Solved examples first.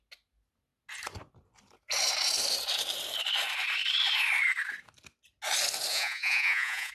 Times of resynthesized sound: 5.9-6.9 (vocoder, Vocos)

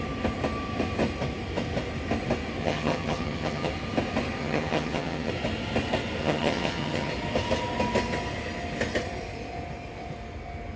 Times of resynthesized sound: 2.6-3.7 (vocoder, HiFi-GAN); 4.4-5.3; 6.2-7.1

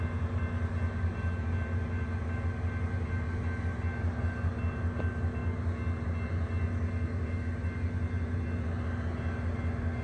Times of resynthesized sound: none

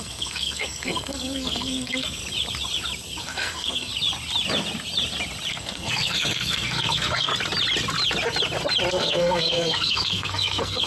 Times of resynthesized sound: 0.0-2.2 (codec, SNAC); 3.2-3.9; 5.5-7.3; 8.9-10.9

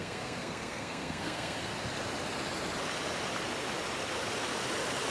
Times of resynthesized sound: 0.0-1.7 (codec, SNAC)

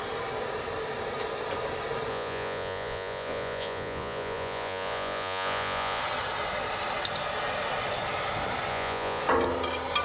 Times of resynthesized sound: 2.1-6.0 (vocoder, Vocos); 8.7-9.2